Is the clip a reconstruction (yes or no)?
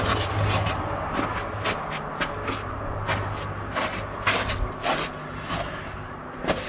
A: no